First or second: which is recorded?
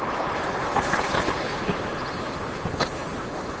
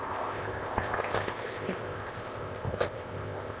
first